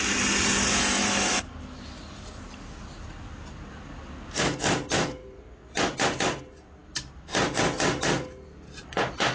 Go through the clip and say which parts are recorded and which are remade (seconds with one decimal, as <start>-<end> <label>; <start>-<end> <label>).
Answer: 0.0-9.3 recorded

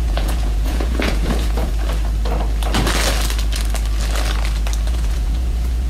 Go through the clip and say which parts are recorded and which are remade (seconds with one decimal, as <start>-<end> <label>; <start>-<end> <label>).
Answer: 0.0-1.7 remade; 1.7-4.9 recorded; 4.9-5.9 remade

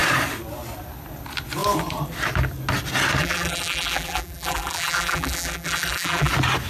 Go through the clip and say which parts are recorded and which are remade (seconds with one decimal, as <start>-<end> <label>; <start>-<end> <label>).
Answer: 0.0-3.2 recorded; 3.2-6.3 remade; 6.3-6.7 recorded